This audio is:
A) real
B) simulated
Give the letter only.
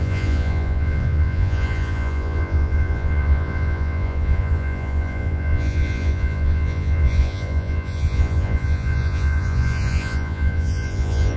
B